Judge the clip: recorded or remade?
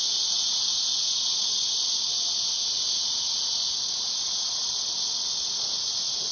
recorded